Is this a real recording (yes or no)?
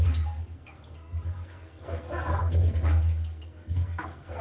no